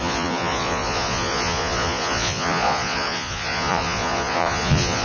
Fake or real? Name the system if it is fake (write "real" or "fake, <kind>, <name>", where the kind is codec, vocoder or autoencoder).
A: fake, vocoder, Vocos